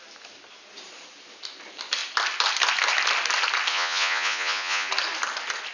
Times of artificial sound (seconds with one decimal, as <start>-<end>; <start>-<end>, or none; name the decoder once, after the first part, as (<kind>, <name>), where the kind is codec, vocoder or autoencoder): 3.7-4.9 (vocoder, Vocos)